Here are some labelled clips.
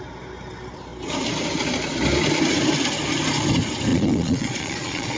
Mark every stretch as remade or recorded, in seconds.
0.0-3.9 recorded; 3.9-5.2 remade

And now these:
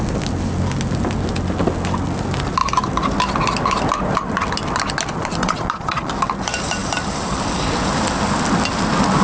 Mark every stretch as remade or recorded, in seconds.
0.0-5.4 recorded; 5.4-6.1 remade; 6.1-9.2 recorded

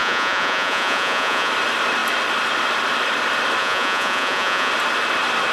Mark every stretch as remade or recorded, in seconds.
0.0-1.5 remade; 1.5-3.6 recorded; 3.6-4.7 remade; 4.7-5.5 recorded

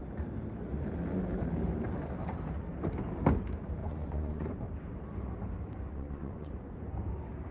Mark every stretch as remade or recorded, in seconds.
0.0-3.8 recorded; 3.8-4.5 remade; 4.5-5.9 recorded; 5.9-6.5 remade; 6.5-7.5 recorded

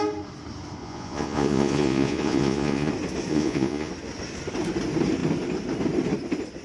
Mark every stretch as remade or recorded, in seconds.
0.0-0.8 recorded; 0.8-2.9 remade; 2.9-3.3 recorded; 3.3-3.9 remade; 3.9-6.6 recorded

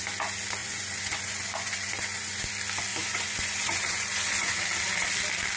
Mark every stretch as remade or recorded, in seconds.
0.0-0.6 recorded; 0.6-2.5 remade; 2.5-2.9 recorded; 2.9-4.6 remade; 4.6-5.6 recorded

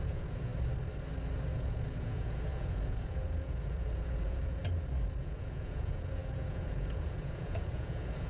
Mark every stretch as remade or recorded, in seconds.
0.0-0.5 remade; 0.5-1.5 recorded; 1.5-4.6 remade; 4.6-5.2 recorded; 5.2-8.3 remade

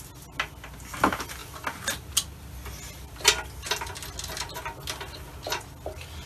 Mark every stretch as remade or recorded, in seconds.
0.0-6.3 recorded